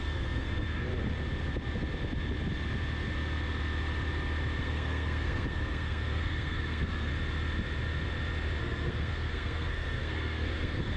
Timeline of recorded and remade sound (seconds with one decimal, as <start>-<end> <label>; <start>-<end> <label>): 0.0-0.9 remade; 0.9-4.6 recorded; 4.6-7.1 remade; 7.1-8.6 recorded; 8.6-11.0 remade